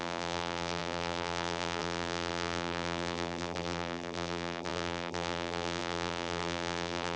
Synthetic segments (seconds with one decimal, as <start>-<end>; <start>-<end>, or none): 0.0-7.2